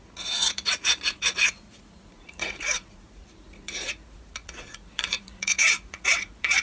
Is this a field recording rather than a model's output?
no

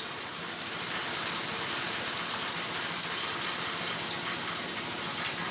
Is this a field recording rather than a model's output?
yes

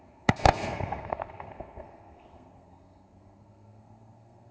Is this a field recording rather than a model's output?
no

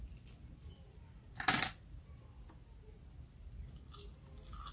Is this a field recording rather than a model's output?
yes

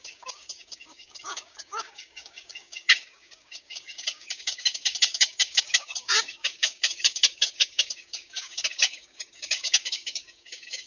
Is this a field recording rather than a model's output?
no